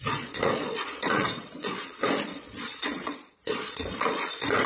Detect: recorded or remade remade